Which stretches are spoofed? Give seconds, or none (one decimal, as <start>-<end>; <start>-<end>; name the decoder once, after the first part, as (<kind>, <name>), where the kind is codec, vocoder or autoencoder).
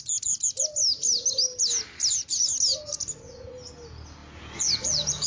4.2-5.3 (vocoder, Vocos)